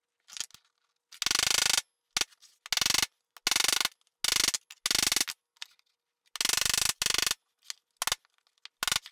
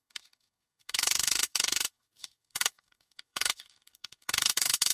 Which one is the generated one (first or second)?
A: second